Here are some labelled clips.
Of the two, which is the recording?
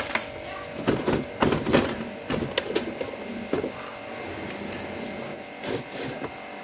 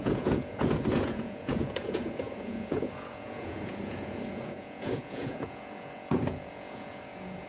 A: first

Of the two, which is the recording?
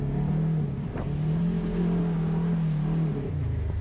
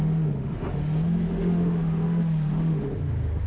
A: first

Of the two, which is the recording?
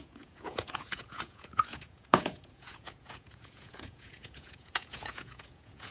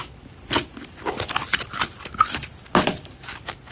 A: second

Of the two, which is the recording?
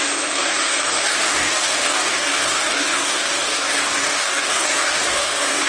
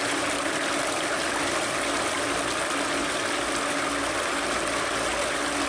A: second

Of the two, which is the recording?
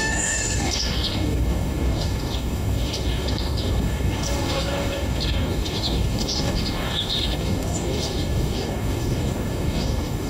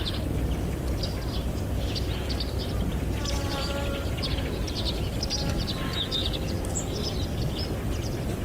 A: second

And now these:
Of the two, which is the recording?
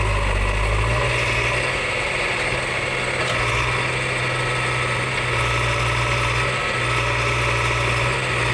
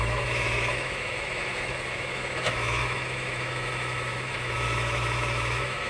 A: first